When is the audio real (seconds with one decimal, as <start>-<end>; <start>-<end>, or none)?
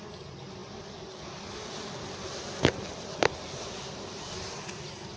0.0-5.2